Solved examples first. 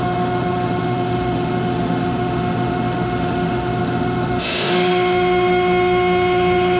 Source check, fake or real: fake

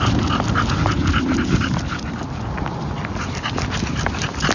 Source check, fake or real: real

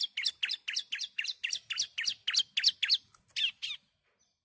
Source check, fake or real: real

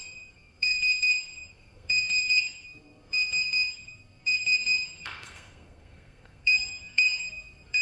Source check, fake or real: fake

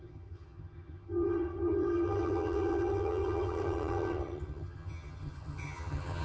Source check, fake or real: fake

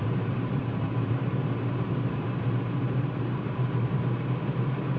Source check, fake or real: fake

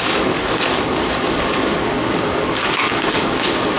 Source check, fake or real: fake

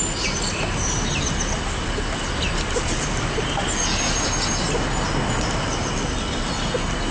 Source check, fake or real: real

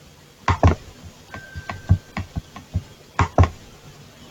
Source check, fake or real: real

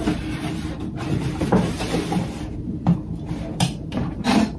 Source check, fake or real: fake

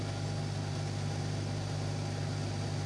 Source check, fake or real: real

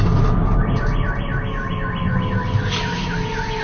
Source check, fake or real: real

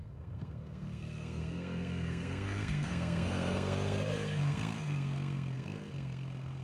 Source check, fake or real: fake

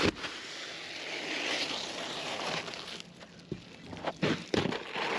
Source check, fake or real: real